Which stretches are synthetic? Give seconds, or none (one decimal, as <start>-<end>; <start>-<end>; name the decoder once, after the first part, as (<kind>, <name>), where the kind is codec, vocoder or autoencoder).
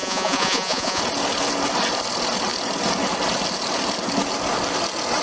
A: 0.0-1.0 (vocoder, Vocos)